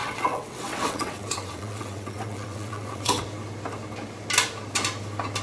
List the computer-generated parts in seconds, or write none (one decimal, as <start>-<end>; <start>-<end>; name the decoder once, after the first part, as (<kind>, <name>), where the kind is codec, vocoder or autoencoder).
0.0-3.2 (vocoder, WaveNeXt)